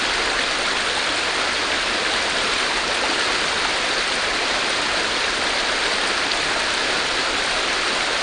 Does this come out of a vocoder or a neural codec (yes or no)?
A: no